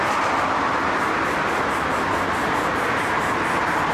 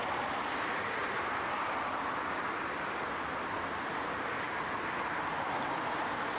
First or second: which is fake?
second